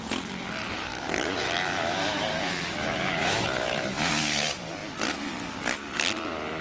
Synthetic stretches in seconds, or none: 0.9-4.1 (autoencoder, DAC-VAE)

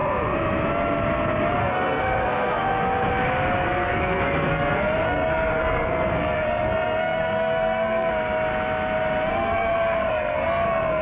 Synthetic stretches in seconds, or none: 1.6-3.1 (codec, SNAC); 3.6-8.1; 9.3-11.0

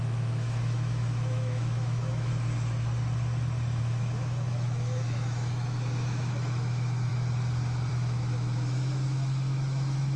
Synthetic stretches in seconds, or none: 0.0-2.3 (autoencoder, DAC-VAE); 3.8-7.1; 7.9-10.2

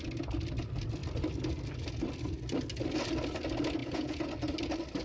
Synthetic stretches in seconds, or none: 3.8-4.3 (vocoder, Vocos)

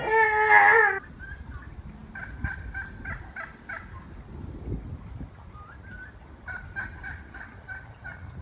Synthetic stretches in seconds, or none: none

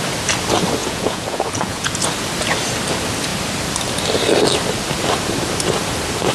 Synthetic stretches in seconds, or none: 0.8-2.0 (vocoder, Vocos)